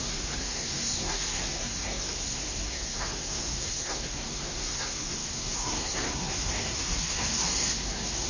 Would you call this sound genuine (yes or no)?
no